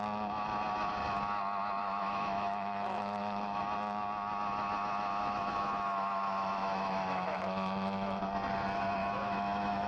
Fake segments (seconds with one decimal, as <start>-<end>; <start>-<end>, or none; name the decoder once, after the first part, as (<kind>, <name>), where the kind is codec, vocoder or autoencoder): 1.8-3.6 (autoencoder, DAC-VAE); 5.1-8.2; 9.0-9.9